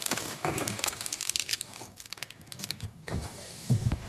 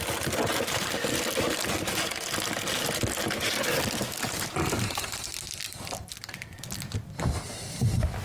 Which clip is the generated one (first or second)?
first